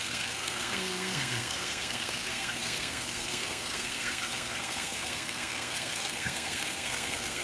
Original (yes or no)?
no